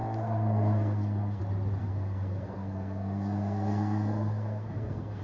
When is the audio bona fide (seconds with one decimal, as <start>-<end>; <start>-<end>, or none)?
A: 1.4-1.8